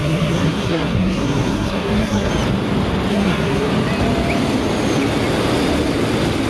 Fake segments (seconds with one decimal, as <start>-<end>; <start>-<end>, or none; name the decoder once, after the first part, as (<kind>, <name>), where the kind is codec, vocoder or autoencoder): 0.0-2.3 (codec, SNAC); 3.1-3.7